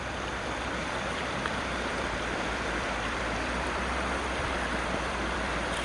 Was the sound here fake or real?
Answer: fake